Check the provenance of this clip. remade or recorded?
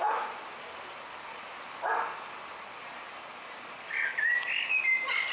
recorded